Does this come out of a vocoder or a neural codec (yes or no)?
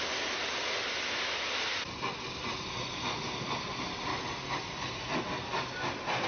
no